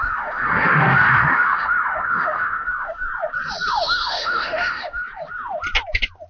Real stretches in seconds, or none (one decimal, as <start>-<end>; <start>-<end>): 3.1-3.7; 5.0-6.3

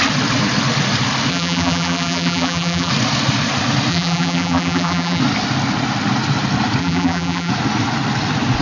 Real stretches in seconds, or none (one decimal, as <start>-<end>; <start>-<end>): 0.0-1.3; 2.9-3.9; 5.2-6.8; 7.5-8.6

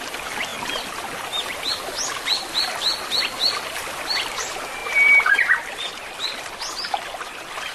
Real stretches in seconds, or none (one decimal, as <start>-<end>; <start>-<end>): 0.0-7.7

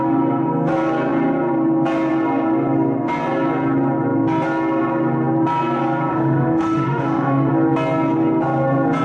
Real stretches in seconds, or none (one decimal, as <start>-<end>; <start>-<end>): 0.0-6.1; 7.5-9.0

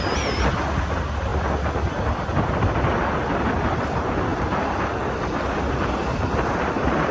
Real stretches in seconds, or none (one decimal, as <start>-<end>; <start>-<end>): 0.0-7.1

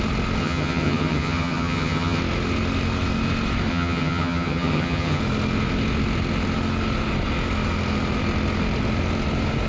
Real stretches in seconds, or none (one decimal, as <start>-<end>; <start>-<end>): 0.0-0.4; 2.2-3.7; 5.2-9.7

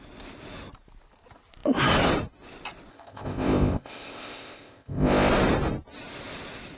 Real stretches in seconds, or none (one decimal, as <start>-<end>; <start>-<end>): 0.0-2.9; 5.3-6.8